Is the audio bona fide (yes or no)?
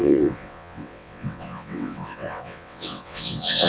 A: no